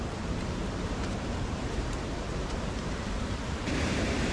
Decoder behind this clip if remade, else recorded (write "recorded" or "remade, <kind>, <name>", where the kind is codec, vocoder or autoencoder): remade, vocoder, BigVGAN v2